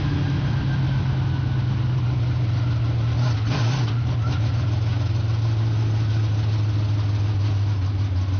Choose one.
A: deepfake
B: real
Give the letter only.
B